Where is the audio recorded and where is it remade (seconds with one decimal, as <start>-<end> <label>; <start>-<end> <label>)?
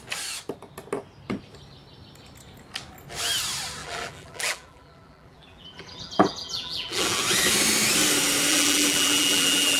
0.0-3.8 recorded; 3.8-7.2 remade; 7.2-8.5 recorded; 8.5-9.8 remade